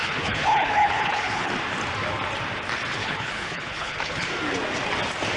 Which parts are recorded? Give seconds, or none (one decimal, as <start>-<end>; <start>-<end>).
1.5-3.0; 4.3-5.4